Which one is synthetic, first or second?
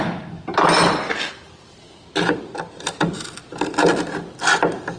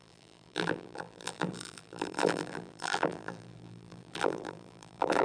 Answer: second